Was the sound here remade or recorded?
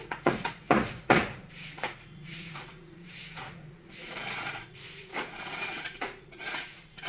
remade